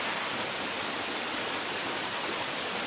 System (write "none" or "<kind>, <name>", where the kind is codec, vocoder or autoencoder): none